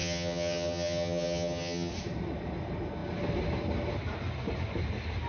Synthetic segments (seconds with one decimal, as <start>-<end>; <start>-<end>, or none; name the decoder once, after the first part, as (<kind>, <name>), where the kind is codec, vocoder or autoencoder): 0.0-1.9 (vocoder, HiFi-GAN)